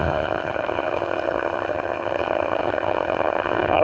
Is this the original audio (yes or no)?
no